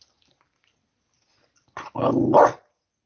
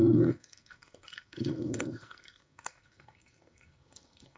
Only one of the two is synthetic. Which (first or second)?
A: second